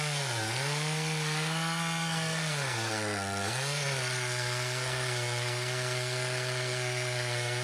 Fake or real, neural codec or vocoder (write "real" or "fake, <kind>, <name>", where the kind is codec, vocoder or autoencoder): fake, codec, SNAC